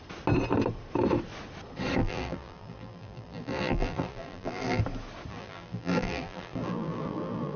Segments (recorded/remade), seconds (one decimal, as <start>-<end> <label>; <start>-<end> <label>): 0.0-2.0 recorded; 2.0-4.8 remade; 4.8-5.3 recorded; 5.3-7.6 remade